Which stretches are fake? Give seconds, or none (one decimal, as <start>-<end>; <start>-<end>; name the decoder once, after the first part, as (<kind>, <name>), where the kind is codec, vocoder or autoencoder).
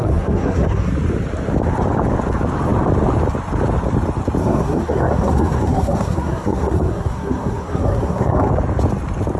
0.0-0.9 (codec, SNAC); 4.4-8.5